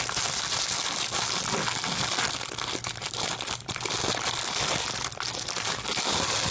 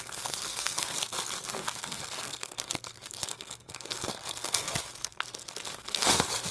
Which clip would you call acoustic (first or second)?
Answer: first